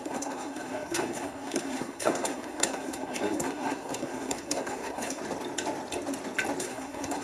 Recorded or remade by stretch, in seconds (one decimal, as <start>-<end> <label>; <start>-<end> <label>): 0.0-5.2 remade; 5.2-6.6 recorded; 6.6-7.2 remade